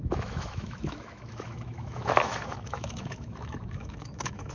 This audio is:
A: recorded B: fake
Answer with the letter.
B